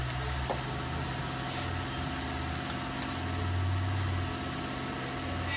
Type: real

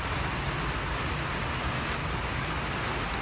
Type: real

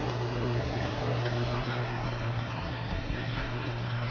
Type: fake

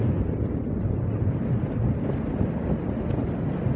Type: real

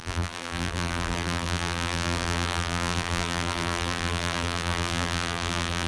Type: fake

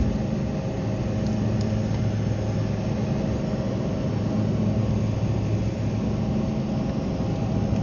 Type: real